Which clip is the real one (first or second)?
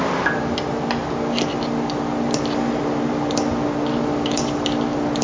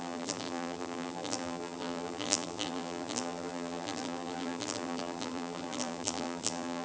first